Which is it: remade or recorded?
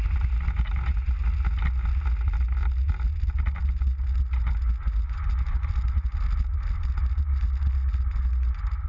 recorded